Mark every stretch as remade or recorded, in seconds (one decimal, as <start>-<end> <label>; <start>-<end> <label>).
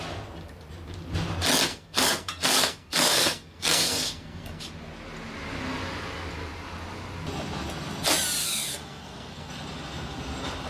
0.0-1.7 recorded; 1.7-4.6 remade; 4.6-8.4 recorded; 8.4-9.5 remade; 9.5-10.7 recorded